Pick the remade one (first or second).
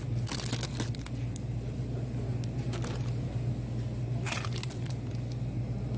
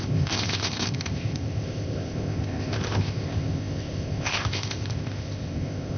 second